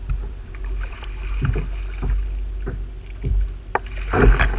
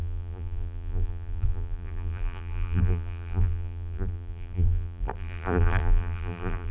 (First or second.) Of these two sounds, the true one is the first